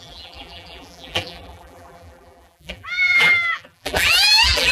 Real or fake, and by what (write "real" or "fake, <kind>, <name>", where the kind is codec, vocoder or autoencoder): fake, vocoder, BigVGAN v2